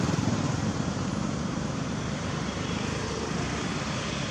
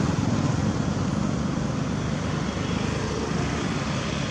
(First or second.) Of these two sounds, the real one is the second